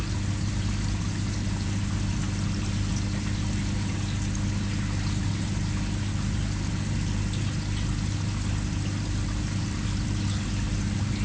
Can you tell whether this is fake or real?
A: real